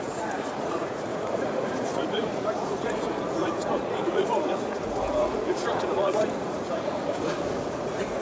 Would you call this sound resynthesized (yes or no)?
yes